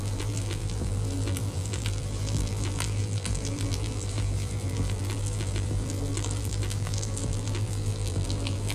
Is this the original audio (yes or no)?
no